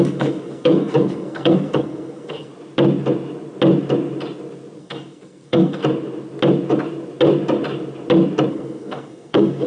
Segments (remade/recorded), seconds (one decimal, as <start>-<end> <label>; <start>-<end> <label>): 0.0-2.5 remade; 2.5-4.8 recorded; 4.8-5.8 remade; 5.8-8.5 recorded; 8.5-9.7 remade